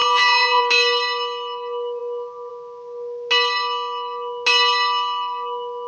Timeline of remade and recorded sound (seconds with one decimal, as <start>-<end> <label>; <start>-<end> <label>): 0.0-0.6 remade; 0.6-5.9 recorded